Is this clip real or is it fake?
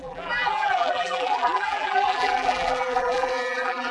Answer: fake